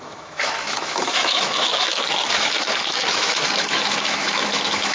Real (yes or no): no